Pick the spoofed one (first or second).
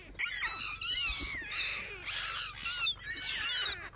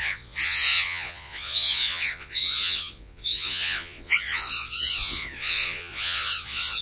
second